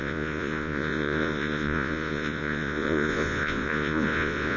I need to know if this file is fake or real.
fake